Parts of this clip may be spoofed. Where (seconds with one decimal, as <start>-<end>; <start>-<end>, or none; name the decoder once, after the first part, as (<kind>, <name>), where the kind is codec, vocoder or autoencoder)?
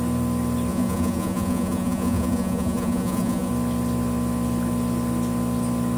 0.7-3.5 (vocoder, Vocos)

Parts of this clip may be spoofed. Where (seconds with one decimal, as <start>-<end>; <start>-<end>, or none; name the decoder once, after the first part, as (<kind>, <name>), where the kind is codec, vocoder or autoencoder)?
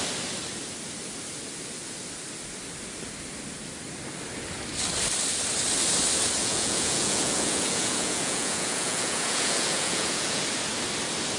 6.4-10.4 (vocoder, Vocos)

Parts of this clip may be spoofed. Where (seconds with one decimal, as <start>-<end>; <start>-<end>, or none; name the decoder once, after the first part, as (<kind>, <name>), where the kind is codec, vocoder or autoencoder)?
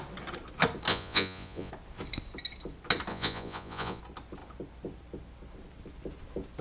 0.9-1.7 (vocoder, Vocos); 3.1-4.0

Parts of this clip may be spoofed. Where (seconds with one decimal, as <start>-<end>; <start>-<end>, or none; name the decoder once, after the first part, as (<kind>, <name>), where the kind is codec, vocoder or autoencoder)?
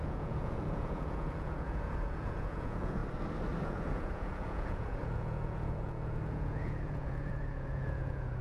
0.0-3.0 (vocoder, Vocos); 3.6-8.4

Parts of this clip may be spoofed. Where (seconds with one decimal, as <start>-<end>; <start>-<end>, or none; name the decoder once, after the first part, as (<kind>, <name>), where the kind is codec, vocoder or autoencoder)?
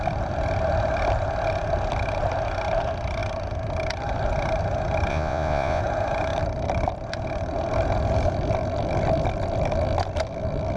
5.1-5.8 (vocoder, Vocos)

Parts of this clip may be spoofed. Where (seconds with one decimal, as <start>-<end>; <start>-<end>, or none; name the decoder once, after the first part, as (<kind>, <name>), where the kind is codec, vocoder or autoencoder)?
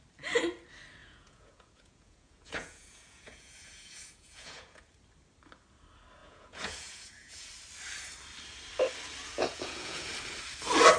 1.0-4.8 (vocoder, Vocos); 6.2-7.5; 9.2-10.1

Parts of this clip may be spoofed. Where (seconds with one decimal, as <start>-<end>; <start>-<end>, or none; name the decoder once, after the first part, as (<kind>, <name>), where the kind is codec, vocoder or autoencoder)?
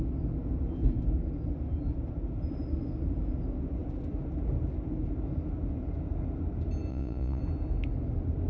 6.9-7.4 (vocoder, Vocos)